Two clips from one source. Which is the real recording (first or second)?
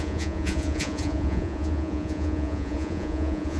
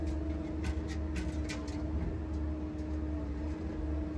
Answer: second